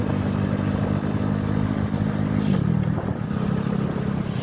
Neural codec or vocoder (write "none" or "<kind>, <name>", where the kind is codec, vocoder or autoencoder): none